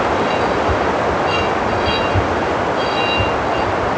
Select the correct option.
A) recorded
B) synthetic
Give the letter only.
A